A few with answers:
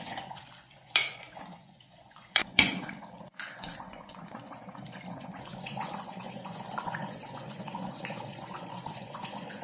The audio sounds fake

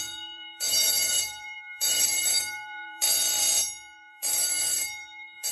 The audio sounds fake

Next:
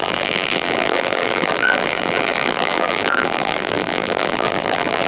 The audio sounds fake